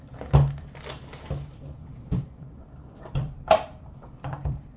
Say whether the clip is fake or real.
fake